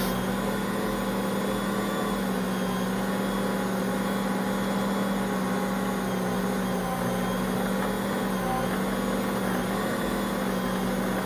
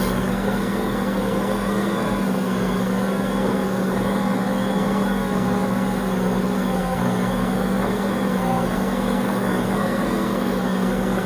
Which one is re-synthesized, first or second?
second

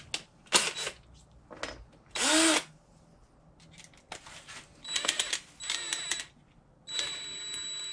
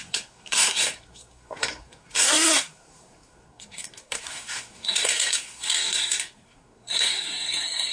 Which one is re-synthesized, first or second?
second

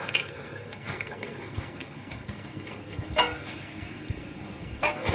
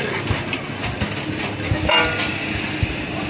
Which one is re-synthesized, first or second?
first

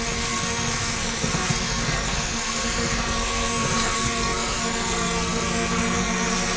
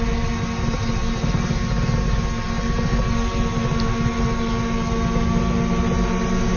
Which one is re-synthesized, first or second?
first